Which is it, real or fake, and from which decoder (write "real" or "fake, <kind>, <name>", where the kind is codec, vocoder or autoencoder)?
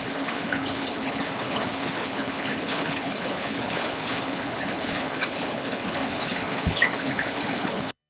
fake, codec, HILCodec